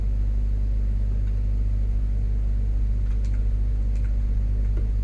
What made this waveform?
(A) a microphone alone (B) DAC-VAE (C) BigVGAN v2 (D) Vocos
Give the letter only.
A